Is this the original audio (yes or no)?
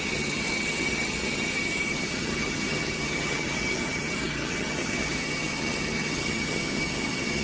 no